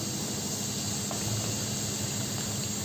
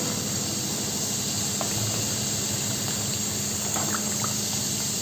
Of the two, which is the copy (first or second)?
second